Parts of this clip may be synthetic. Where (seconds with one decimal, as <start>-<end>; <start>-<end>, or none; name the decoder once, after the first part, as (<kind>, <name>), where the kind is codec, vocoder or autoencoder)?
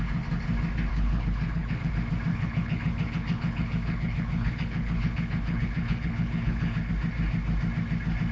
0.9-1.9 (codec, HILCodec); 2.3-6.9